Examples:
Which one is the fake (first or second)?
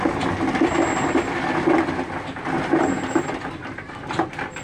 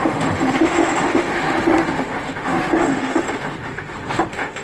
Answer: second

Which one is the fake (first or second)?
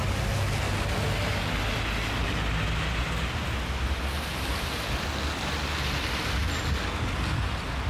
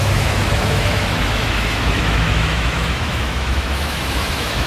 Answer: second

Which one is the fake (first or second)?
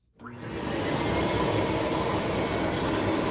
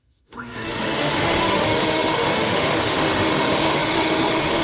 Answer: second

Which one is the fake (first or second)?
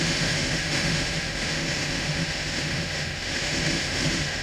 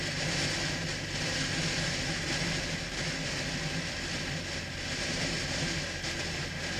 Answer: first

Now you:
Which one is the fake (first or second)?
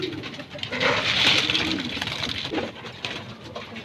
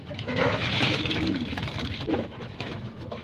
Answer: second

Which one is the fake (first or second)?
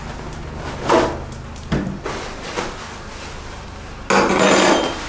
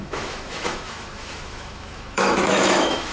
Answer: second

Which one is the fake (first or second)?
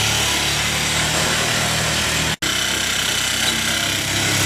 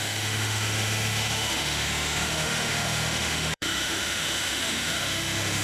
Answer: second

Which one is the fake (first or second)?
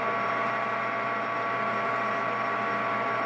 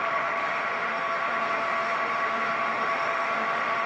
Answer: second